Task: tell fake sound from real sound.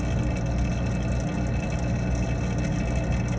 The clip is real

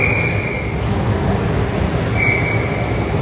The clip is real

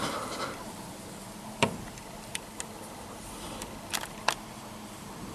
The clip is real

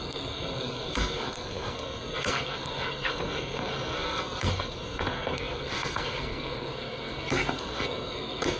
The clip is fake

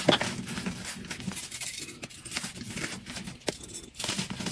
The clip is real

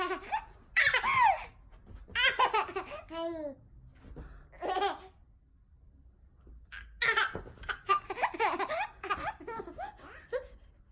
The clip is real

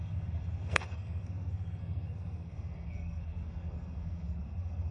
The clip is fake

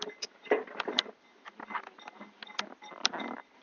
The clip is real